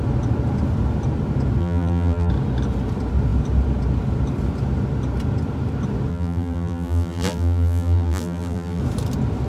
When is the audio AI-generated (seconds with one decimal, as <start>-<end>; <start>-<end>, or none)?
1.6-2.3; 6.1-8.8